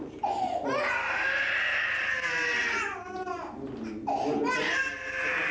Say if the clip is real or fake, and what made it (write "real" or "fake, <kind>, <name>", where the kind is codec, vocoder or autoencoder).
real